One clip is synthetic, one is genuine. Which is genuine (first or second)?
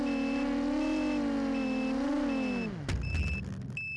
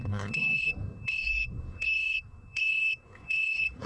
first